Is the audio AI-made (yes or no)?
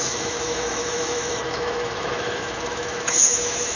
yes